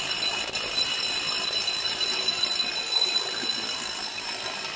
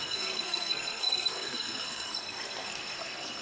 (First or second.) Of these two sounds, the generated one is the second